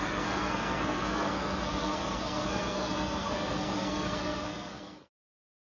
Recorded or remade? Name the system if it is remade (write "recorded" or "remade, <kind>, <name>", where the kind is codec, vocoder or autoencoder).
remade, codec, SNAC